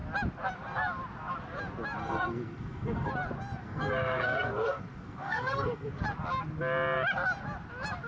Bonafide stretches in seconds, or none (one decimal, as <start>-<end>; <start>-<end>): 0.0-2.0; 3.1-3.6; 6.0-8.1